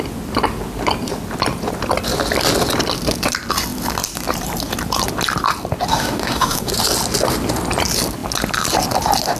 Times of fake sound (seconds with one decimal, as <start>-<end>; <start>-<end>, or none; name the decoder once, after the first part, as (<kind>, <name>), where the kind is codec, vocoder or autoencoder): 5.9-6.7 (autoencoder, DAC-VAE)